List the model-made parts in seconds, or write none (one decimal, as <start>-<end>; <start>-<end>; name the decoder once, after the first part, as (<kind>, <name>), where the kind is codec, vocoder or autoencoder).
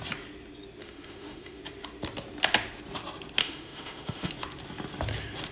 0.8-1.6 (autoencoder, DAC-VAE); 3.4-4.3